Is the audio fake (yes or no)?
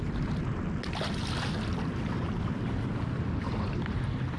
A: no